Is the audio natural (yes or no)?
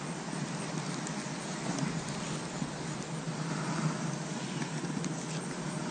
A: yes